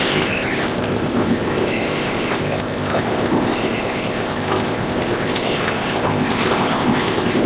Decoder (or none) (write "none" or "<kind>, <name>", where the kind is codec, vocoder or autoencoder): codec, ZipCodec